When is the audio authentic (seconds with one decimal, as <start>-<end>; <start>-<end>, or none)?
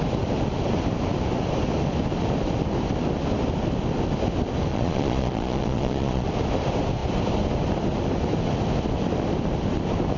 0.0-4.7; 6.3-10.2